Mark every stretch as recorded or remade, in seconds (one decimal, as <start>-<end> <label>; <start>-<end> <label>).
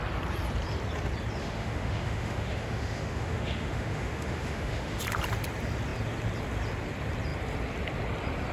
0.0-1.4 recorded; 1.4-5.0 remade; 5.0-8.5 recorded